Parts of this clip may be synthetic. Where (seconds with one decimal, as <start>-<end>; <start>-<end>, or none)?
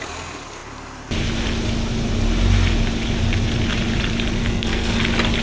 4.4-5.0